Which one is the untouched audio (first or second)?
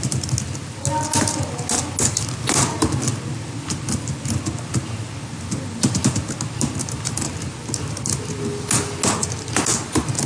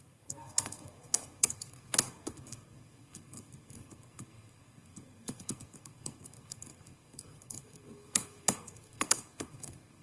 first